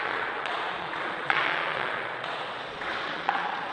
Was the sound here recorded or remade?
remade